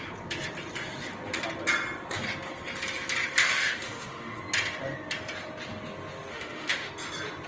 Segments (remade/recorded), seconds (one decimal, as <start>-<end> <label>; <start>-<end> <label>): 0.0-3.4 recorded; 3.4-4.4 remade; 4.4-6.3 recorded; 6.3-6.9 remade; 6.9-7.5 recorded